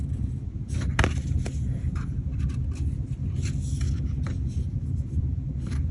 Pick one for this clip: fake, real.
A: real